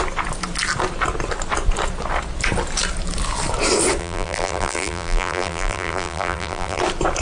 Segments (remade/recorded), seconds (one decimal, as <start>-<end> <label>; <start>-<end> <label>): 0.0-4.0 recorded; 4.0-6.8 remade; 6.8-7.2 recorded